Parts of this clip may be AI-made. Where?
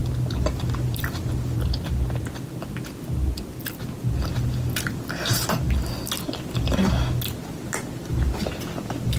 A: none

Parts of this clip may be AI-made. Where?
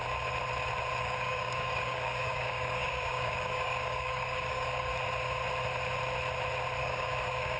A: 1.0-4.9; 6.8-7.6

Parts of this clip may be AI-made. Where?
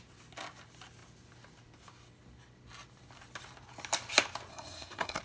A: 4.5-5.2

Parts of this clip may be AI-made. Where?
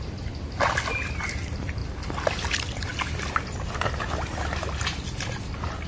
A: none